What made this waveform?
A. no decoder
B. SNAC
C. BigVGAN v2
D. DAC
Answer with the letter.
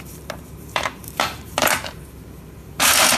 C